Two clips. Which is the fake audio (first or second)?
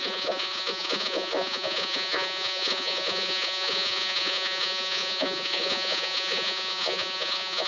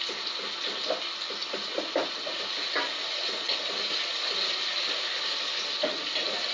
first